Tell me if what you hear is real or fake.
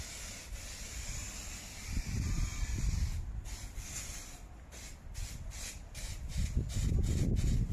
fake